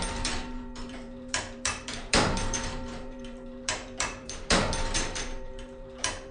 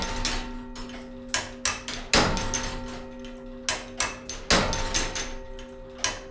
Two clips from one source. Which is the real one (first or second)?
second